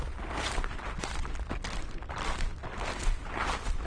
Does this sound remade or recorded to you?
recorded